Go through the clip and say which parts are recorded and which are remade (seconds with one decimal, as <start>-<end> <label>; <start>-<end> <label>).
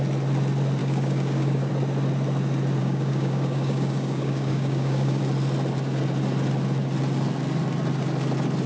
0.0-0.8 recorded; 0.8-1.7 remade; 1.7-2.8 recorded; 2.8-5.2 remade; 5.2-8.7 recorded